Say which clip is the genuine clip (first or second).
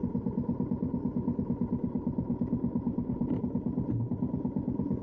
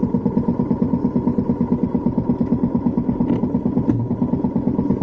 second